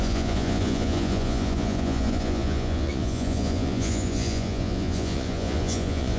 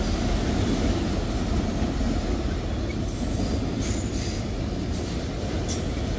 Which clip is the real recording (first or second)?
second